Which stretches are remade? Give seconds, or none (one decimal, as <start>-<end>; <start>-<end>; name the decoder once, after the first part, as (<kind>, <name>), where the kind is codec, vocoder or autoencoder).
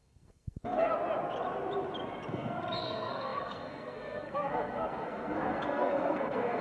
0.0-0.9 (codec, SNAC); 2.3-6.6